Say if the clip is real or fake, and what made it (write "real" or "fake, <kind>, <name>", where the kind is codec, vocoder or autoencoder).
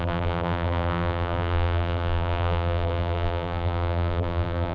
fake, vocoder, BigVGAN v2